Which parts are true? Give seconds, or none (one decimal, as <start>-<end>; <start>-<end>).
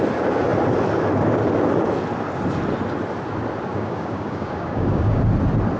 0.0-3.7; 5.2-5.8